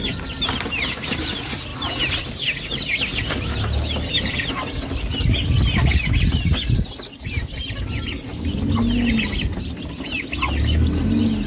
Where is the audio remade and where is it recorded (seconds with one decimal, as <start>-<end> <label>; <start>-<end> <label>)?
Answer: 0.0-11.5 recorded

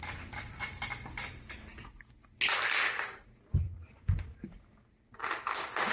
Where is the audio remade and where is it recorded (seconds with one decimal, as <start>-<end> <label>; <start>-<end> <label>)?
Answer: 0.0-5.9 recorded

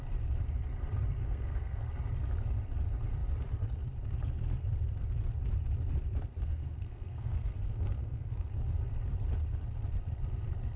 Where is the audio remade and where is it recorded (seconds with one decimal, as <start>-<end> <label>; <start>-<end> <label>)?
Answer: 0.0-1.2 recorded; 1.2-1.8 remade; 1.8-6.4 recorded; 6.4-8.5 remade; 8.5-10.8 recorded